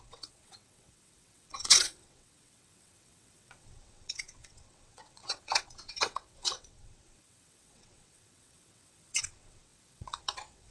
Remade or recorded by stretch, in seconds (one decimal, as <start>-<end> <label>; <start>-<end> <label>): 0.0-10.7 remade